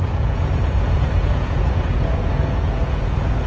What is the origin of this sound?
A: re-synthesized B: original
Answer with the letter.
A